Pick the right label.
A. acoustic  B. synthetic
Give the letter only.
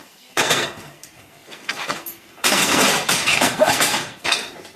B